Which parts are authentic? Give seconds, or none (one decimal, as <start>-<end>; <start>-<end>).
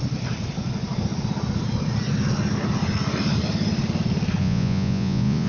0.0-4.4